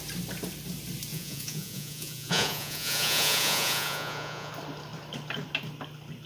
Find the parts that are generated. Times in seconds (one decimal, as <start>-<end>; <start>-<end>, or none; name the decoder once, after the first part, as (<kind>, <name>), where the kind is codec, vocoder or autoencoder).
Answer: 1.1-4.5 (vocoder, Vocos)